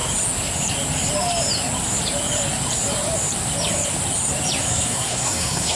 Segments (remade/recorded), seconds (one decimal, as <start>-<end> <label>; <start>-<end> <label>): 0.0-4.7 recorded; 4.7-5.8 remade